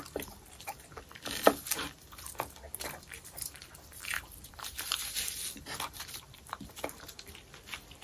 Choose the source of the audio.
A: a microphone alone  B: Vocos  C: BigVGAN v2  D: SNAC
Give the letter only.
C